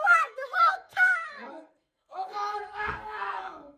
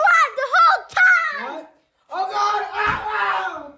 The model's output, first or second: first